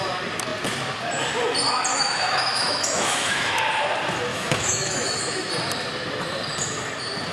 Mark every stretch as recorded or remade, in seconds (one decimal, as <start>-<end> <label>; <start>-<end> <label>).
0.0-1.9 recorded; 1.9-3.5 remade; 3.5-4.3 recorded; 4.3-5.5 remade; 5.5-7.3 recorded